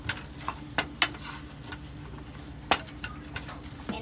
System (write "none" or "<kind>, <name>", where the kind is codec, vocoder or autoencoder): none